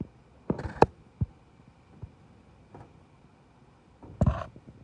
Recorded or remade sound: recorded